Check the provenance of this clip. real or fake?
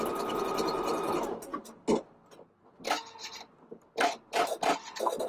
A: real